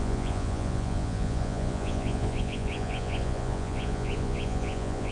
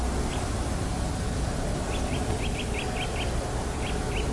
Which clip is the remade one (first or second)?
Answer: first